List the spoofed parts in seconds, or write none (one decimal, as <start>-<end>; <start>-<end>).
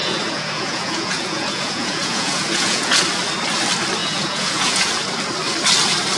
0.0-3.0; 4.0-4.9